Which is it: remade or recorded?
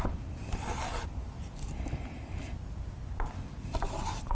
recorded